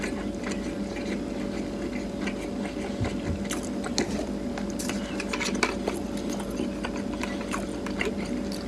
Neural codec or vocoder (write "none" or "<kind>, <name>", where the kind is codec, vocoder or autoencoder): none